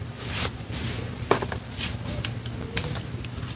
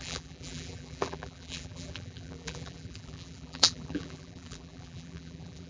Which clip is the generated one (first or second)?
second